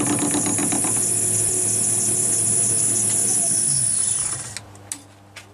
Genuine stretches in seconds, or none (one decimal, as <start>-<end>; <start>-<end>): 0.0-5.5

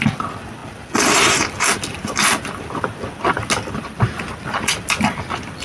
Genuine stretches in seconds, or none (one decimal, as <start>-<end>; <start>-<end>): 0.0-5.6

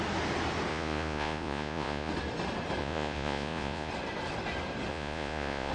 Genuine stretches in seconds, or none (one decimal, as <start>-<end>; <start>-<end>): 0.0-0.7; 2.1-2.8; 3.9-4.9